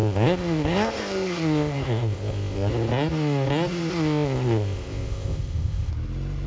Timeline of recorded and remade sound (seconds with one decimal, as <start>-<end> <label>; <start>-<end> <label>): 0.0-2.7 remade; 2.7-3.9 recorded; 3.9-5.9 remade; 5.9-6.5 recorded

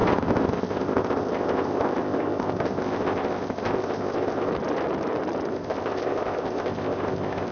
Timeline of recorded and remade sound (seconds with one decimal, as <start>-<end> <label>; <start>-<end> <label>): 0.0-4.5 remade; 4.5-5.5 recorded; 5.5-7.5 remade

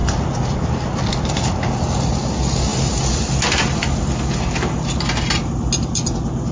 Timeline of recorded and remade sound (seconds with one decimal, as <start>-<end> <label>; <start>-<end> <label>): 0.0-6.5 recorded

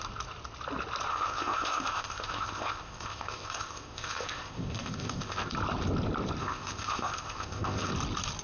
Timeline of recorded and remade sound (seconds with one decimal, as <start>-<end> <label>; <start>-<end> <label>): 0.0-1.1 recorded; 1.1-5.5 remade; 5.5-6.4 recorded; 6.4-7.9 remade; 7.9-8.4 recorded

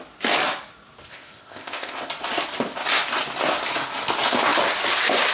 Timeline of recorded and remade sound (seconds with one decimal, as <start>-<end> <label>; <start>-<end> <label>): 0.0-1.1 recorded; 1.1-2.1 remade; 2.1-5.3 recorded

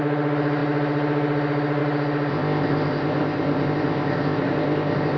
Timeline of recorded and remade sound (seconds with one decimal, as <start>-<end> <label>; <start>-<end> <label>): 0.0-2.3 recorded; 2.3-5.2 remade

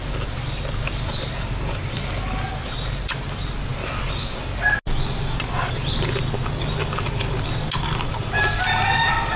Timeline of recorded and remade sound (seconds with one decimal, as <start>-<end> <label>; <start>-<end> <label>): 0.0-9.4 recorded

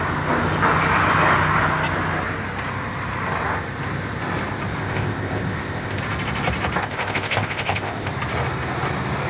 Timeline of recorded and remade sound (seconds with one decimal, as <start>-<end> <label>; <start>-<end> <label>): 0.0-4.8 recorded; 4.8-6.0 remade; 6.0-6.8 recorded; 6.8-8.1 remade; 8.1-9.3 recorded